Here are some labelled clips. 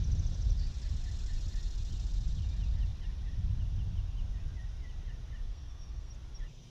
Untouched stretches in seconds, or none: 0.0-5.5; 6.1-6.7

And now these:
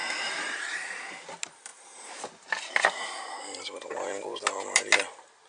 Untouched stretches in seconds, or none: 1.1-1.7; 4.4-5.5

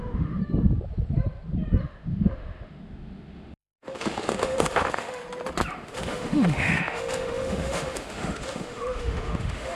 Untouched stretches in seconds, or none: 0.4-1.8; 5.2-5.7